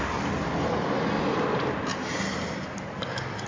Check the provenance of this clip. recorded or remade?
recorded